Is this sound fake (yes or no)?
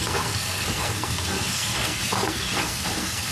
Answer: yes